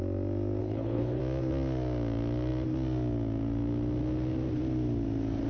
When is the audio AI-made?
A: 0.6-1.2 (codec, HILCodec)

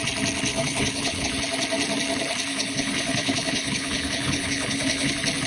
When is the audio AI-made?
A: 0.5-1.3 (codec, HILCodec); 2.5-5.1

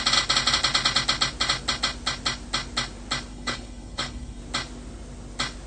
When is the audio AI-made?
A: 3.3-4.4 (codec, HILCodec)

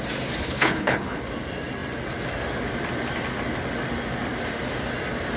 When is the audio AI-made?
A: 0.4-1.2 (codec, HILCodec)

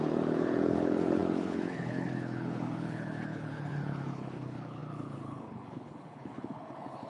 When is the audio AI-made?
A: 0.0-7.1 (codec, HILCodec)

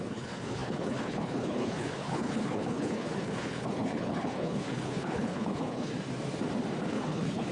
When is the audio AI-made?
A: 0.0-5.9 (codec, HILCodec); 6.9-7.5